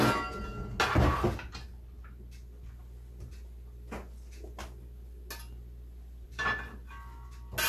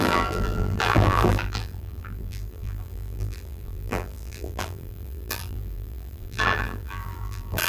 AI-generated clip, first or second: second